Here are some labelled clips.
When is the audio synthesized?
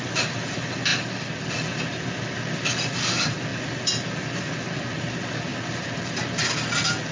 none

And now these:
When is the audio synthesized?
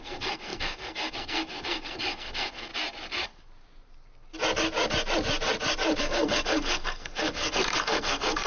0.0-2.7 (codec, SNAC); 6.0-8.5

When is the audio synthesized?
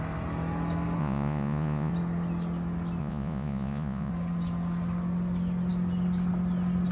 1.0-1.9 (vocoder, Vocos); 3.0-4.1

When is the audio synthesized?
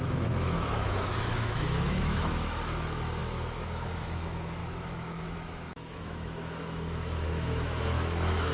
0.0-8.5 (autoencoder, DAC-VAE)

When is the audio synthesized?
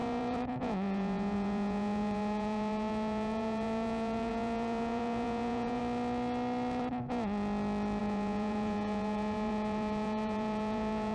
0.0-5.8 (vocoder, Vocos); 8.0-11.1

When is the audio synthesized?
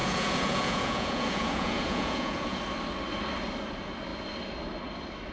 0.0-2.6 (vocoder, Vocos)